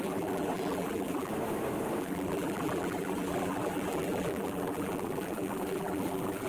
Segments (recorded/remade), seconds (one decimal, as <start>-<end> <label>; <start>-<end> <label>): 0.0-1.3 remade; 1.3-2.0 recorded; 2.0-6.5 remade